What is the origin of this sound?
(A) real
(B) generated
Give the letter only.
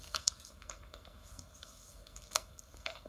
B